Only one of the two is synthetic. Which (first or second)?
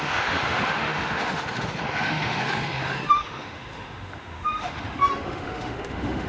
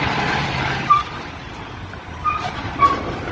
first